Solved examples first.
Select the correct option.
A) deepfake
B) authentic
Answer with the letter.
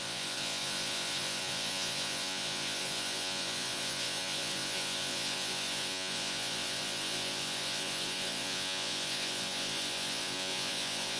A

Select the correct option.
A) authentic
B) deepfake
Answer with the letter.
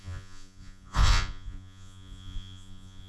B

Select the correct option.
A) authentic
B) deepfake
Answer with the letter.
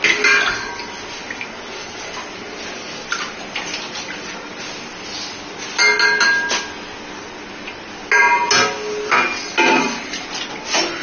A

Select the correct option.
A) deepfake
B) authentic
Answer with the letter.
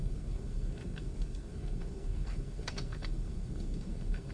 A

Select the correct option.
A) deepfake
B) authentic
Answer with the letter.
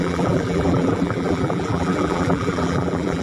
A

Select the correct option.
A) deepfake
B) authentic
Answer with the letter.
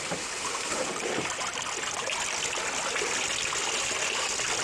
B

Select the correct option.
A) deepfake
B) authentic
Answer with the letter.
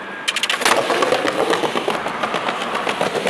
B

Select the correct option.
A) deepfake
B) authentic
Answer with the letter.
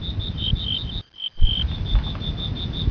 B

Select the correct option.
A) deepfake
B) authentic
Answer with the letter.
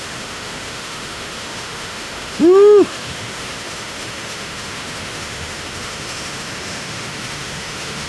A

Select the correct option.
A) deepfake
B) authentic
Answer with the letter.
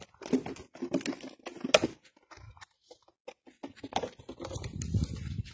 B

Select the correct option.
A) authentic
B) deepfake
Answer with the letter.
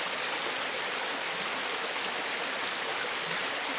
A